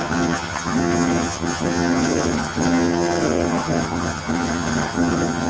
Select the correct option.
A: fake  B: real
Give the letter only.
A